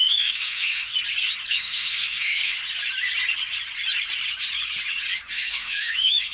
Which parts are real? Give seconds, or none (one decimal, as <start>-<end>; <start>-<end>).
0.9-1.5; 2.6-5.3